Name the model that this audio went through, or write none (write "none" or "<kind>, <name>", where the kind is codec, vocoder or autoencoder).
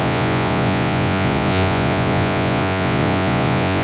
vocoder, Vocos